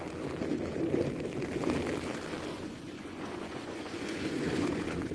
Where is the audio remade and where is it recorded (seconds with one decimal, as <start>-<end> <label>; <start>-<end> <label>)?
0.0-2.5 recorded; 2.5-5.1 remade